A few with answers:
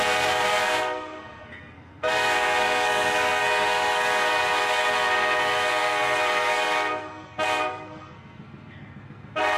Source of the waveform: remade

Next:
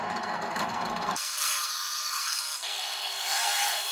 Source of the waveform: remade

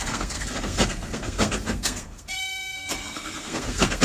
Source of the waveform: remade